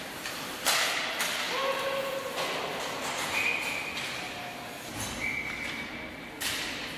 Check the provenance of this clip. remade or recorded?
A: recorded